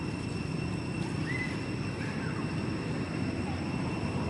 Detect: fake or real real